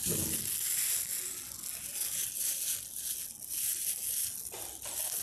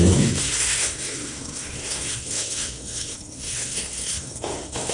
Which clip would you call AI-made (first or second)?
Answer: second